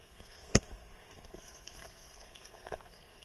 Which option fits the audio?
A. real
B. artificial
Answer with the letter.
B